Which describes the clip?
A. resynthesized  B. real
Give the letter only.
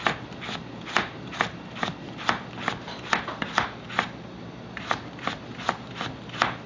B